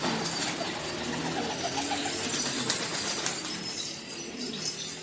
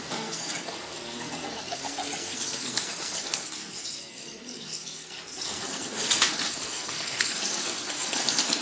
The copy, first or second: second